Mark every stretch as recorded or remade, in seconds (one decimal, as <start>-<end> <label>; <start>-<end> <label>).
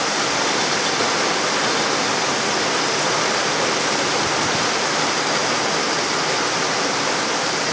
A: 0.0-7.7 recorded